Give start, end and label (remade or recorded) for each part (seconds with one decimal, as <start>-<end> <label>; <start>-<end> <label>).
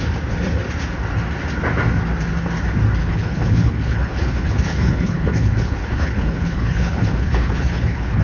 0.0-3.0 recorded; 3.0-8.2 remade